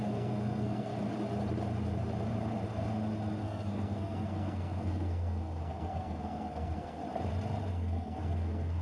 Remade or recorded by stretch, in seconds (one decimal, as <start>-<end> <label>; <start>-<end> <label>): 0.0-0.9 remade; 0.9-3.4 recorded; 3.4-7.0 remade; 7.0-7.7 recorded; 7.7-8.8 remade